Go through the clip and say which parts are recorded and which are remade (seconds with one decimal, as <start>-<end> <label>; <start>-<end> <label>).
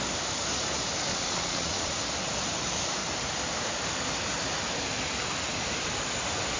0.0-1.1 recorded; 1.1-1.9 remade; 1.9-6.6 recorded